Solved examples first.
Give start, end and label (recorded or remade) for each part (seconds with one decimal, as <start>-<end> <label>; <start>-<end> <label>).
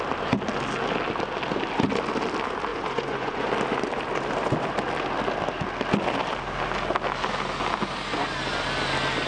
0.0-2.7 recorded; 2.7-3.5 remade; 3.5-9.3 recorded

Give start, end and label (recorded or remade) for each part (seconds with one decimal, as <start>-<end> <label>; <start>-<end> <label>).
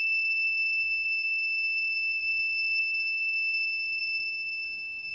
0.0-5.1 remade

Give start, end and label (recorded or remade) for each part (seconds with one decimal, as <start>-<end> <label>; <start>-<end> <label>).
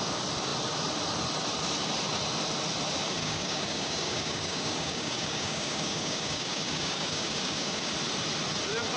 0.0-3.2 recorded; 3.2-7.9 remade; 7.9-9.0 recorded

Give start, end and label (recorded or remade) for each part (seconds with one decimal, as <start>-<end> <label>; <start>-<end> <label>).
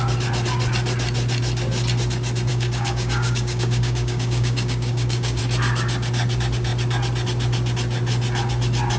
0.0-2.5 recorded; 2.5-5.4 remade; 5.4-9.0 recorded